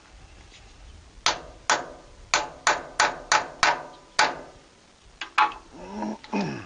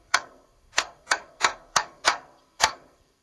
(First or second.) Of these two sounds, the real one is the first